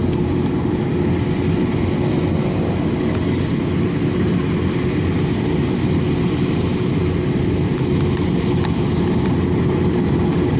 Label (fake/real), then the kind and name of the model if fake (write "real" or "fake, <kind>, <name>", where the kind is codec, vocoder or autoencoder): real